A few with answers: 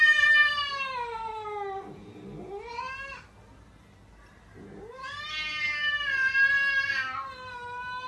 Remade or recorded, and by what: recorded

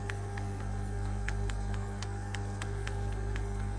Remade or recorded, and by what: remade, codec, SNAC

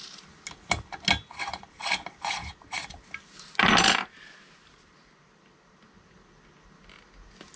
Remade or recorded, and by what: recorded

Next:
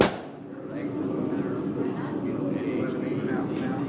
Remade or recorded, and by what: recorded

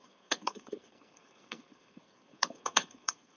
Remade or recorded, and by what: remade, codec, SNAC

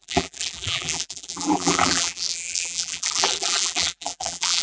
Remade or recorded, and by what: remade, vocoder, BigVGAN v2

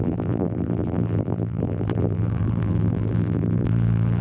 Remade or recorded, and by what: remade, vocoder, BigVGAN v2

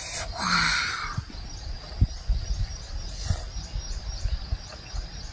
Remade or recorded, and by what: recorded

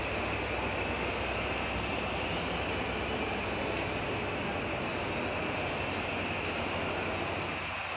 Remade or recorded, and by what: recorded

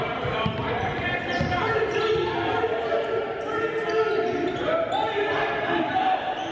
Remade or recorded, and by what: recorded